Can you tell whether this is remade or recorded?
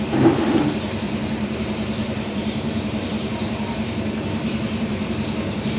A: remade